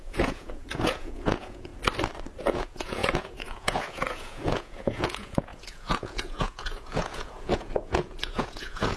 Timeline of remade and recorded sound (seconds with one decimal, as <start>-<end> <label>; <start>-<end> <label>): 0.0-1.7 remade; 1.7-2.4 recorded; 2.4-9.0 remade